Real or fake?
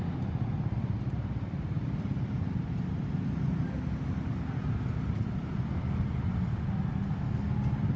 real